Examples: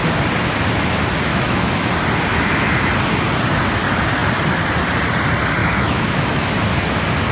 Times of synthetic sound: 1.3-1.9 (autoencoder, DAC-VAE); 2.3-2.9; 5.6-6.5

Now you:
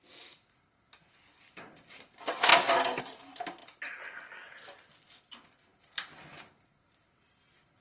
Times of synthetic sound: none

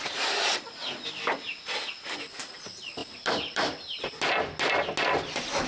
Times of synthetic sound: 3.0-3.7 (vocoder, BigVGAN v2)

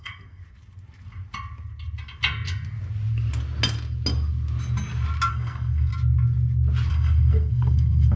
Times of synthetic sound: 0.0-0.4 (codec, SNAC); 5.3-5.9; 6.9-8.2

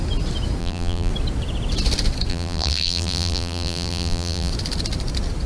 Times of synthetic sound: 0.6-1.1 (vocoder, BigVGAN v2); 2.3-4.5

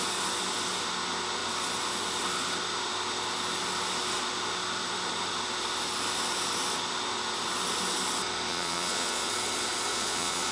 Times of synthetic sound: 8.5-9.3 (vocoder, Vocos); 9.9-10.5